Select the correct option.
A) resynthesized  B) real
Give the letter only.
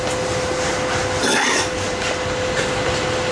B